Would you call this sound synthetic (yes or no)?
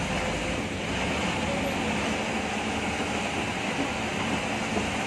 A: no